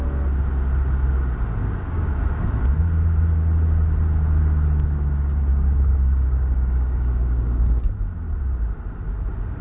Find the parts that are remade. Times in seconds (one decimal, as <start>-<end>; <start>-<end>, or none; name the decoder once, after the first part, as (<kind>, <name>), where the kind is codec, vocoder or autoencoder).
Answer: 1.6-2.2 (codec, DAC); 5.5-7.9